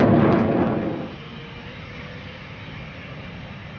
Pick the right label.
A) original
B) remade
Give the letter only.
A